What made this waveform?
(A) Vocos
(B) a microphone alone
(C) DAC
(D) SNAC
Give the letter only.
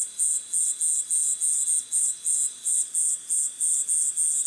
B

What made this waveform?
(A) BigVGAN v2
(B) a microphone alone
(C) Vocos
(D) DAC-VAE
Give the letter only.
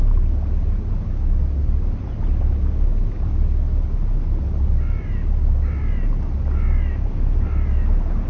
B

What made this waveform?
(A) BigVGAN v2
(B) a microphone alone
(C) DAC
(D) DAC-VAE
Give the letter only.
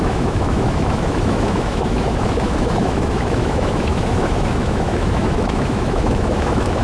D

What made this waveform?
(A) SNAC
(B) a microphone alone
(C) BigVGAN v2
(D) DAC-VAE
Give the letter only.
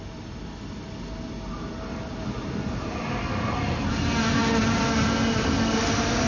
B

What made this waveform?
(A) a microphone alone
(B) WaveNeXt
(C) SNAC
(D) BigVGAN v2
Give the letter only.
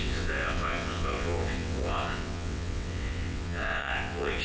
B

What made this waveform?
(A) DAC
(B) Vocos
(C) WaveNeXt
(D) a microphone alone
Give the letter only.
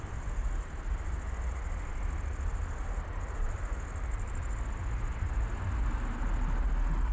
D